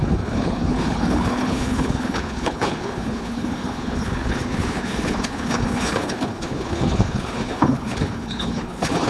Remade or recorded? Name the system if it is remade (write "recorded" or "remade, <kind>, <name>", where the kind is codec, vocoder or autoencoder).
remade, codec, HILCodec